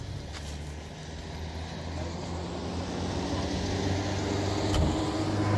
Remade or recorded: recorded